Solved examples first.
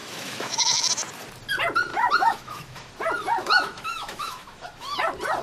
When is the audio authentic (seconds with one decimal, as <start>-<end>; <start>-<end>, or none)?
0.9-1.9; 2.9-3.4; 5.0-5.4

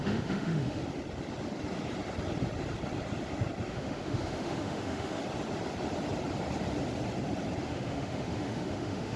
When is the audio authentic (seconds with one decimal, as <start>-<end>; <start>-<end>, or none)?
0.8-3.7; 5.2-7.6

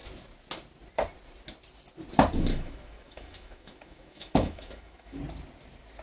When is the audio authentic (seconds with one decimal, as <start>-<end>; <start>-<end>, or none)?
0.0-2.5; 5.2-6.0

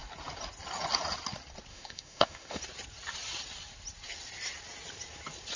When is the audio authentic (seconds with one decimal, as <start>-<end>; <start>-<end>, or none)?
0.0-1.7; 2.6-5.6

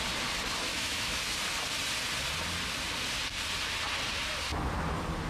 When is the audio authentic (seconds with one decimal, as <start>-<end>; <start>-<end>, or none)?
0.0-0.7; 1.2-5.3

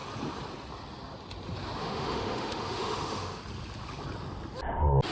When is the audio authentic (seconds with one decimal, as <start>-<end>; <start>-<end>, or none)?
0.0-1.8; 3.4-5.1